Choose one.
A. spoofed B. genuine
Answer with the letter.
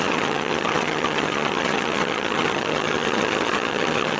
A